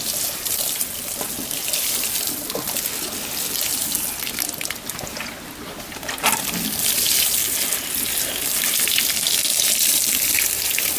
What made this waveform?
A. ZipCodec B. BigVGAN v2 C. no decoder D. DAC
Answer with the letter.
C